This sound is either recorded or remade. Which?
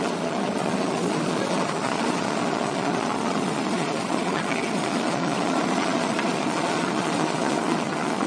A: remade